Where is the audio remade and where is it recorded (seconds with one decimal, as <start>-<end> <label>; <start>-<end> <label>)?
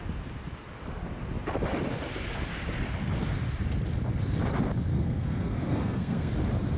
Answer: 0.0-4.9 recorded; 4.9-6.3 remade; 6.3-6.8 recorded